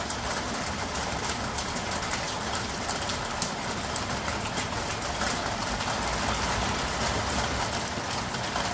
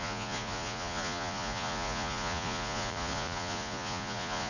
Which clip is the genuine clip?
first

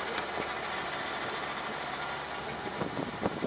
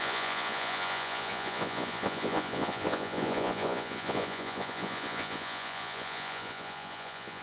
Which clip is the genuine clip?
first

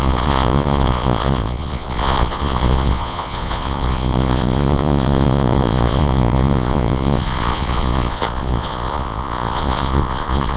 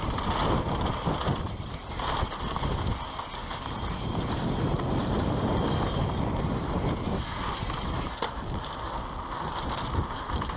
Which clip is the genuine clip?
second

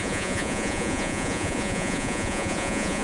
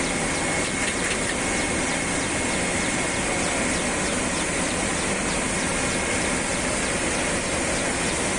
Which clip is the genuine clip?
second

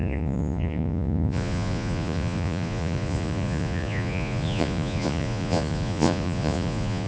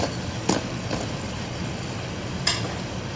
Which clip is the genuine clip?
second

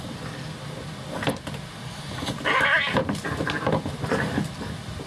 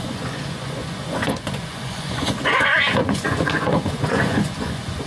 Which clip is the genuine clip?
first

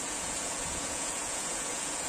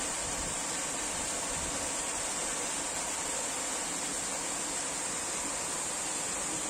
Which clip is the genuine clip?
second